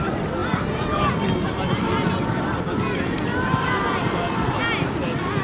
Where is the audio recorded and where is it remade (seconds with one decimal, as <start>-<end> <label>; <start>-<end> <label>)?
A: 0.0-5.4 recorded